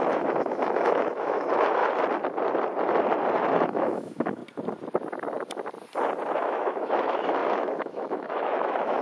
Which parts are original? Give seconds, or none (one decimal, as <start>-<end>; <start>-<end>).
1.8-3.5; 4.4-6.4